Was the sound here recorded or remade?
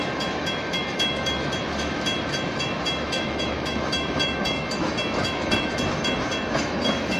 remade